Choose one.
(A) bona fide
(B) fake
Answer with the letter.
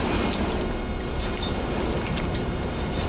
B